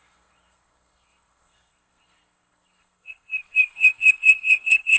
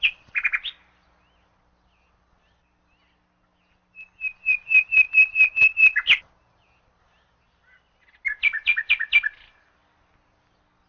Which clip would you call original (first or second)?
second